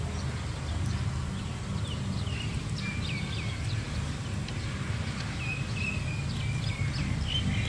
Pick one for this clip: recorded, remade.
recorded